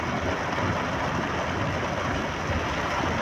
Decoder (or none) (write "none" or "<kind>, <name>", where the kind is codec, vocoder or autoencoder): none